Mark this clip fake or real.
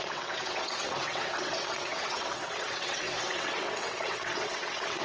fake